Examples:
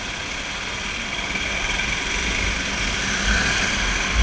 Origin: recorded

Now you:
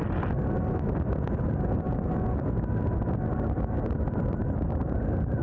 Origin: recorded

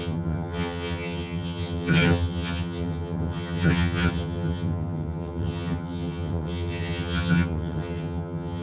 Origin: remade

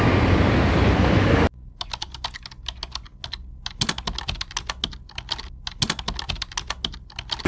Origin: recorded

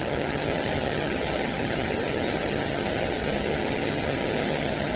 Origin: remade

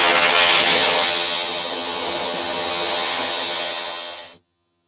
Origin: remade